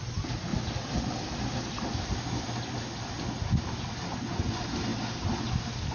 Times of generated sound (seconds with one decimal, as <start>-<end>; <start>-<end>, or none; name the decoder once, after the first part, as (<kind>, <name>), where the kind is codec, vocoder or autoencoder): none